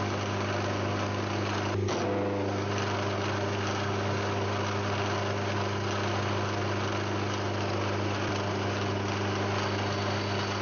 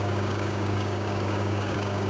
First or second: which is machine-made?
second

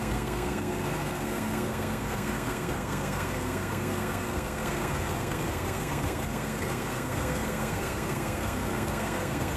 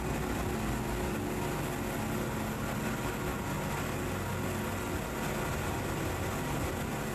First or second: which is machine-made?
first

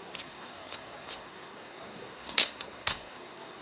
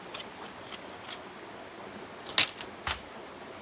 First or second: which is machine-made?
first